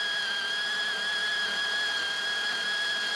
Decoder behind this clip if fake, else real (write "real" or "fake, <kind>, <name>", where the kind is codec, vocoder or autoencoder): fake, vocoder, BigVGAN v2